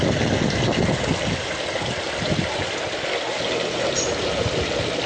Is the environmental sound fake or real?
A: real